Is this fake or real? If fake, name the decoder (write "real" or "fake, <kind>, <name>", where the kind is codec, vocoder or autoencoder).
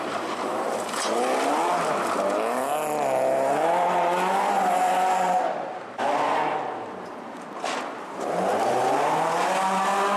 real